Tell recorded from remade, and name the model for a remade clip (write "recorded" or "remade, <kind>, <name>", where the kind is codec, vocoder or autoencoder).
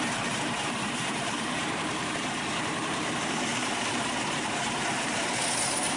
remade, vocoder, BigVGAN v2